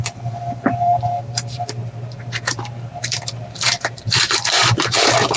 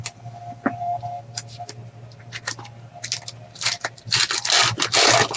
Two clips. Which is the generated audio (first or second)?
first